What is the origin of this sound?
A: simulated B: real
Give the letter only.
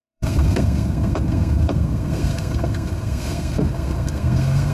A